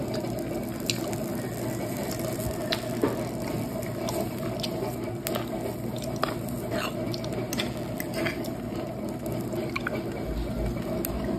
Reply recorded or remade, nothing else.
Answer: recorded